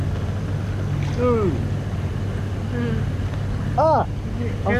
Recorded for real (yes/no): yes